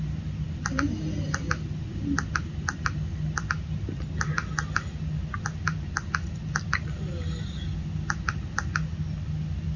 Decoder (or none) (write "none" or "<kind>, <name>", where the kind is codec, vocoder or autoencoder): none